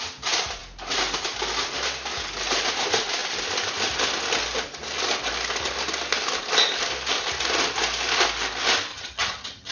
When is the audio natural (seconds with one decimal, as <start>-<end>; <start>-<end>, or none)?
0.0-8.9